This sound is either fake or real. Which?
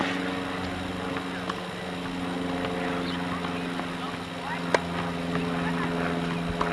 real